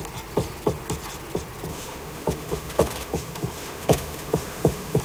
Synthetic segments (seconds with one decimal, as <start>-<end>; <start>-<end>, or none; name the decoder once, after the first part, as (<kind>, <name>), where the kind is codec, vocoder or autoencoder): 1.7-5.0 (autoencoder, DAC-VAE)

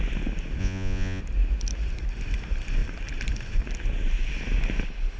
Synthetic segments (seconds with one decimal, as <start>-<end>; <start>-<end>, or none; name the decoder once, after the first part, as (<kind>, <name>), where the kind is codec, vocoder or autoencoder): 0.6-1.2 (vocoder, Vocos)

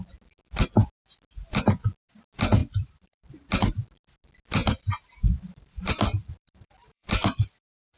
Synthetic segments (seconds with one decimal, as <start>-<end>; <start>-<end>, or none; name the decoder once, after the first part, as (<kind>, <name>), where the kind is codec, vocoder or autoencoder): 2.6-3.5 (vocoder, BigVGAN v2); 4.6-8.0

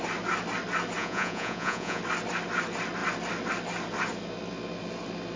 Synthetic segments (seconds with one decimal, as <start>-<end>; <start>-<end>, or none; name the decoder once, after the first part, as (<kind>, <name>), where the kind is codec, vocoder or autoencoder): 1.0-2.0 (vocoder, Vocos)

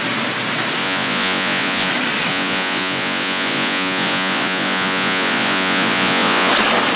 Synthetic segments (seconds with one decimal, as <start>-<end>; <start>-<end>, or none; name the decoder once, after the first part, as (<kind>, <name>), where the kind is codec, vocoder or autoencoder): 0.8-1.9 (vocoder, Vocos); 2.3-6.5

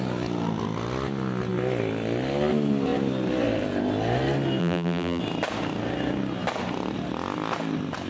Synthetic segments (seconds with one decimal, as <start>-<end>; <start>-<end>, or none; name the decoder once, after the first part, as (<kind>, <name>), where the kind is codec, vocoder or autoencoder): 4.6-5.2 (vocoder, BigVGAN v2)

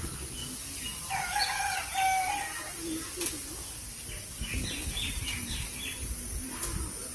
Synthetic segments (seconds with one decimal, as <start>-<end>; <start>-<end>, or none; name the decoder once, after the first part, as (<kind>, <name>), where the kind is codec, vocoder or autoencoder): none

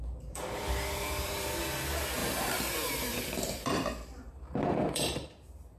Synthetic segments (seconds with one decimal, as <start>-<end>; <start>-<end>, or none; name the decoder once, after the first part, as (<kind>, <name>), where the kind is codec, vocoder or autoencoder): 0.0-5.8 (vocoder, BigVGAN v2)